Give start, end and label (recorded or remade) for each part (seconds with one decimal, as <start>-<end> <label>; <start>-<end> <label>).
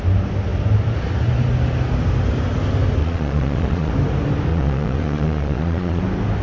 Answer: 0.0-3.0 recorded; 3.0-3.9 remade; 3.9-4.5 recorded; 4.5-6.0 remade; 6.0-6.4 recorded